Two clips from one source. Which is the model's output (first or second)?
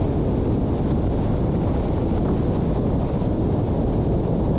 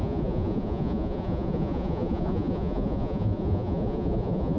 second